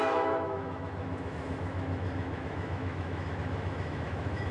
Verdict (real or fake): fake